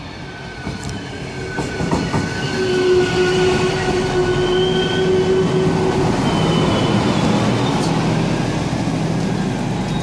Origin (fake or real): real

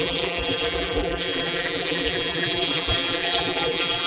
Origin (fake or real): fake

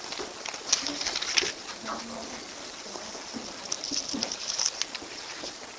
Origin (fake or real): real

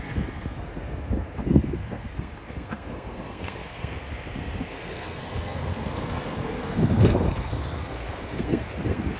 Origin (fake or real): fake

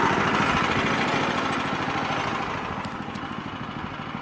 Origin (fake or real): real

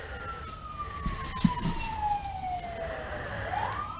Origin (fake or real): real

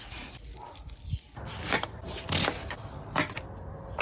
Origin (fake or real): real